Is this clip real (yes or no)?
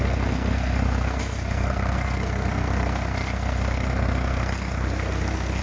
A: no